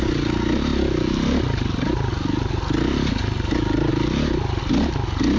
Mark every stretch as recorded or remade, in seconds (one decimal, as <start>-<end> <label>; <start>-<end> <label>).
0.0-5.4 recorded

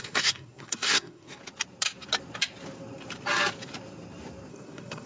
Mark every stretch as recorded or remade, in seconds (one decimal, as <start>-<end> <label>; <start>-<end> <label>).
0.0-1.4 remade; 1.4-4.5 recorded; 4.5-5.1 remade

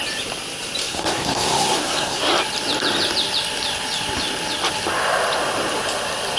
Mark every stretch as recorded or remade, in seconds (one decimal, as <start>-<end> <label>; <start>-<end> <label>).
0.0-0.8 recorded; 0.8-2.3 remade; 2.3-6.4 recorded

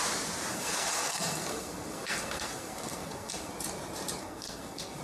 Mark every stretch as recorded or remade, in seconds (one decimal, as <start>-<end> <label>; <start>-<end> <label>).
0.0-0.5 recorded; 0.5-3.5 remade; 3.5-4.2 recorded; 4.2-5.0 remade

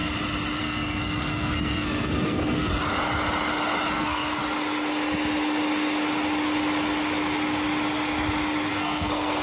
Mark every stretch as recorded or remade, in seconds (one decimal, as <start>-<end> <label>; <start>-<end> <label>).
0.0-0.6 recorded; 0.6-2.7 remade; 2.7-3.9 recorded; 3.9-4.4 remade; 4.4-8.7 recorded; 8.7-9.4 remade

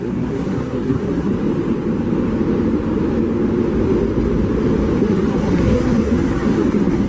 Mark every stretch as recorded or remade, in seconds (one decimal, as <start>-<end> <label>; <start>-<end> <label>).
0.0-1.3 remade; 1.3-5.0 recorded; 5.0-7.1 remade

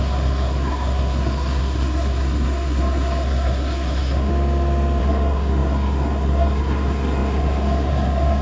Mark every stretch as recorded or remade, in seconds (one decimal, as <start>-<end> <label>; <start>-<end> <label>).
0.0-4.3 remade; 4.3-5.0 recorded; 5.0-8.4 remade

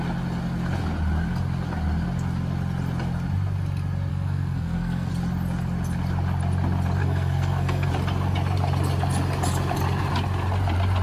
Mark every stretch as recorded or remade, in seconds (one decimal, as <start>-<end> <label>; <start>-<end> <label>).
0.0-4.1 recorded; 4.1-5.1 remade; 5.1-7.0 recorded; 7.0-7.9 remade; 7.9-11.0 recorded